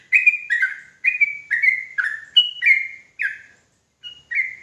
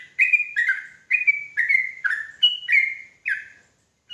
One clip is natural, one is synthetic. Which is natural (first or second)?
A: first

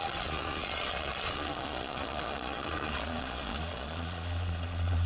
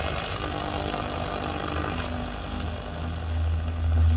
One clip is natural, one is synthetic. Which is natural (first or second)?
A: second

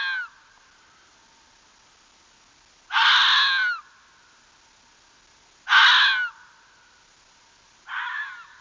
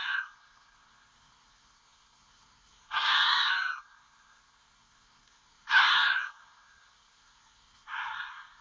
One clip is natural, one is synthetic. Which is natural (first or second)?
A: first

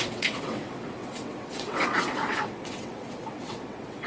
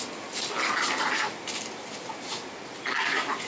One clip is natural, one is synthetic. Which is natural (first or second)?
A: second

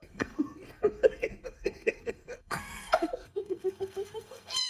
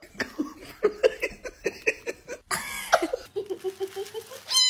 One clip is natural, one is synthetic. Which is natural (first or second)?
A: second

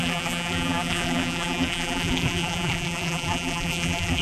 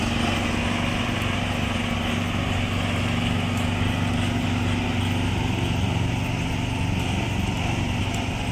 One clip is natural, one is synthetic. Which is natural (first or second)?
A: second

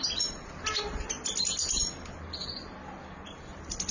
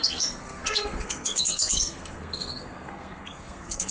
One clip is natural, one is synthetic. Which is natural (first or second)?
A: first